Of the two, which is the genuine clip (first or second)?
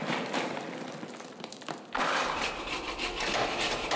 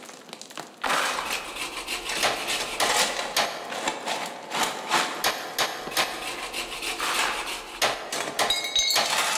second